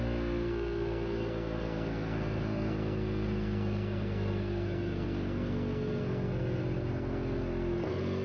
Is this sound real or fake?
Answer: fake